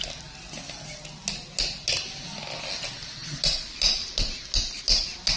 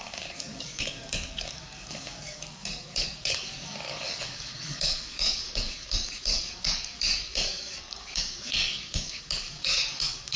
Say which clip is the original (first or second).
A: first